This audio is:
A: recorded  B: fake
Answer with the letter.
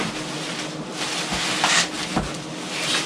A